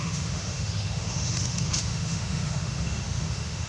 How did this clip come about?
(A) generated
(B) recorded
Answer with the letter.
A